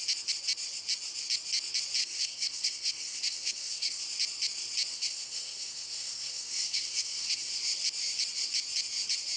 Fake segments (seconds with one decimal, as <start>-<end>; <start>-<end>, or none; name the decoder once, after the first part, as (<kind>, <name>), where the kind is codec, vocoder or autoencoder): 2.0-4.0 (codec, SNAC); 4.9-7.5